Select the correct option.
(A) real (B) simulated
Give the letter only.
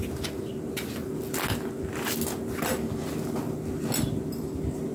A